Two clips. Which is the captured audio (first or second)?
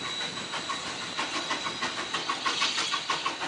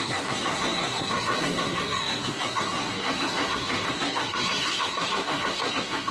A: first